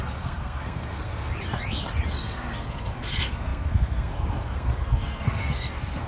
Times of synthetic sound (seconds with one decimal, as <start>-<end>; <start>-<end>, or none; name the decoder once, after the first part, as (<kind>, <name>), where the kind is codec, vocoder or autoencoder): 0.0-1.3 (codec, SNAC); 2.1-6.1